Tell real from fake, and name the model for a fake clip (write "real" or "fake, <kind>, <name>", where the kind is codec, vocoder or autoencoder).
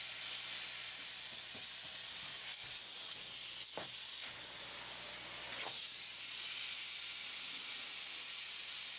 real